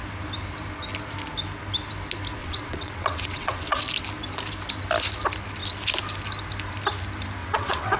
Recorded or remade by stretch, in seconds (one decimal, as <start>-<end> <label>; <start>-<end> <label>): 0.0-2.4 recorded; 2.4-3.8 remade; 3.8-7.4 recorded; 7.4-8.0 remade